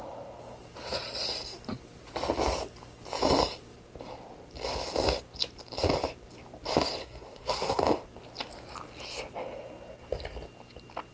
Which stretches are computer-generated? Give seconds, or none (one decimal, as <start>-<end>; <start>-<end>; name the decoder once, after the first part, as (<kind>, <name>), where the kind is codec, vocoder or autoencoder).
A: 7.0-7.8 (codec, SNAC)